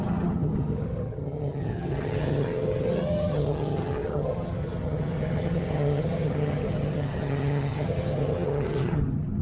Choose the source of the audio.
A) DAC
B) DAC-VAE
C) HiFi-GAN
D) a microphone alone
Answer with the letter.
C